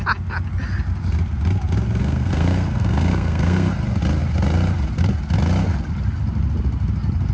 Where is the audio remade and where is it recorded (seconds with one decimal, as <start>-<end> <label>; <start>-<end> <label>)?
0.0-2.0 recorded; 2.0-3.7 remade; 3.7-7.3 recorded